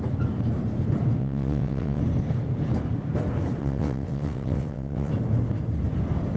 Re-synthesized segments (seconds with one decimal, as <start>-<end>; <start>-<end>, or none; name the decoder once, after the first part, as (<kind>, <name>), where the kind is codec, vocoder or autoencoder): 1.2-2.0 (vocoder, WaveNeXt); 3.6-5.1